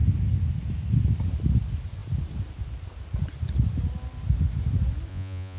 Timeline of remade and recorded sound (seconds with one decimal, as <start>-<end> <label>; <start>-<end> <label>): 0.0-5.1 recorded; 5.1-5.6 remade